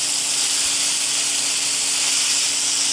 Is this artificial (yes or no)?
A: no